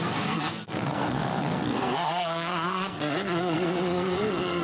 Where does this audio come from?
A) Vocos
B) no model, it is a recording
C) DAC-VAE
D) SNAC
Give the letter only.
D